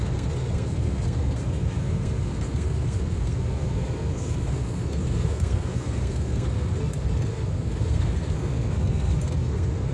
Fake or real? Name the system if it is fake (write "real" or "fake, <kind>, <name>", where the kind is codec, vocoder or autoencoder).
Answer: fake, codec, SNAC